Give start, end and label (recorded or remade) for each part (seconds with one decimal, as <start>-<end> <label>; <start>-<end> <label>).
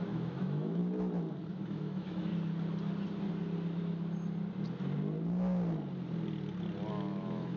0.0-0.8 remade; 0.8-1.5 recorded; 1.5-2.3 remade; 2.3-6.9 recorded; 6.9-7.6 remade